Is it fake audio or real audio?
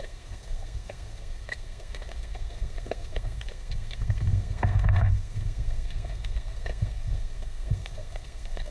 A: fake